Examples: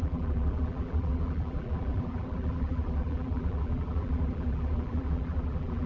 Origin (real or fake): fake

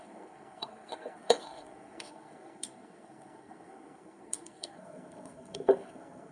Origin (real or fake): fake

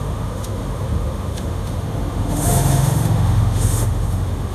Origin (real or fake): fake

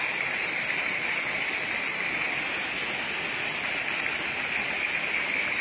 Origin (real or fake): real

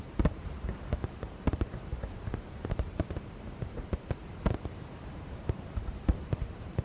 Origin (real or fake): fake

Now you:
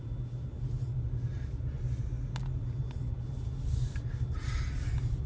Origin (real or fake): real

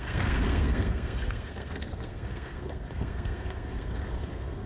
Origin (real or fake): fake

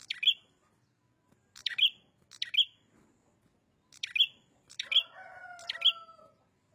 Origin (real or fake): real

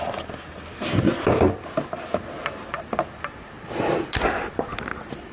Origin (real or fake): real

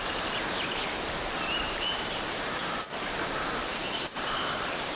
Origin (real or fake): fake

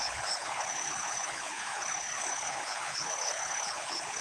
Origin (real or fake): fake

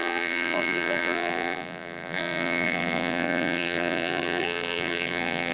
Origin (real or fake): fake